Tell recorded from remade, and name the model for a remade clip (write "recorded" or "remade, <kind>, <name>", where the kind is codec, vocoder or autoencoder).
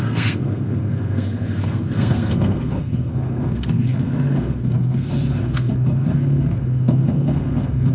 remade, codec, SNAC